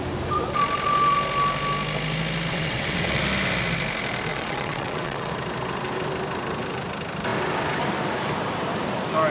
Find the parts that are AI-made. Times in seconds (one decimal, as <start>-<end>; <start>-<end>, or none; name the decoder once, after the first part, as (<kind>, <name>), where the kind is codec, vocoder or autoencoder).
2.5-3.2 (vocoder, WaveNeXt); 4.3-5.3